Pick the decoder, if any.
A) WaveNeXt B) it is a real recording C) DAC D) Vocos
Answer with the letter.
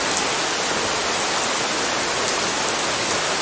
B